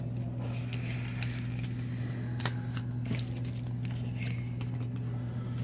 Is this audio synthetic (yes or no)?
no